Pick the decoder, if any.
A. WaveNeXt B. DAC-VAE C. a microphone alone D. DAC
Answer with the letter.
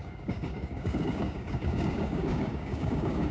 D